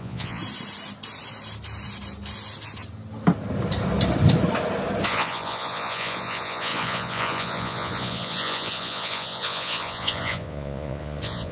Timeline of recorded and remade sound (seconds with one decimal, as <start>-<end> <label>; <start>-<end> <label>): 0.0-0.4 remade; 0.4-5.1 recorded; 5.1-11.5 remade